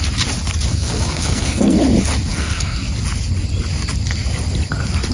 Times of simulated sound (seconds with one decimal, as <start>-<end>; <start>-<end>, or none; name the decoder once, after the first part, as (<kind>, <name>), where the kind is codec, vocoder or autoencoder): 0.7-1.8 (codec, SNAC); 2.3-2.9